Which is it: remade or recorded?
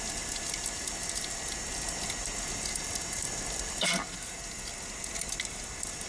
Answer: recorded